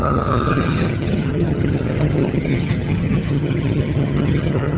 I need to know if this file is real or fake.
fake